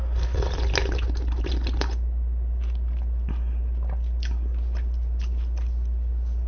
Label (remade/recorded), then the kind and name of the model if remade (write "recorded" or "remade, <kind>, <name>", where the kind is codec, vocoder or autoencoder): recorded